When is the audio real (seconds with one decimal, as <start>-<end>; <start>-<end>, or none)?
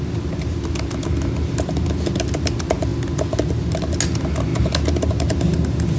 0.0-6.0